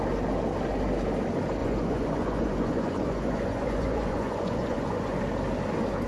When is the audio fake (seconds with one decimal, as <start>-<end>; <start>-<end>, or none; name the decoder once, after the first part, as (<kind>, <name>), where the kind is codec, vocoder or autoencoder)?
1.6-5.2 (vocoder, Vocos)